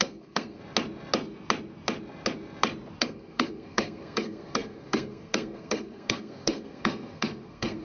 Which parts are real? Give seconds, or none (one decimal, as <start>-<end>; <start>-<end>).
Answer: 0.6-3.0